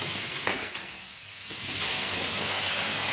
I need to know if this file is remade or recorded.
remade